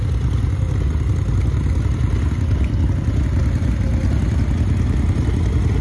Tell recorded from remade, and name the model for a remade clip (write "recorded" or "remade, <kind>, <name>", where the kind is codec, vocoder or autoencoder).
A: recorded